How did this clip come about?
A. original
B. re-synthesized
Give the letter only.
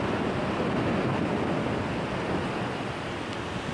A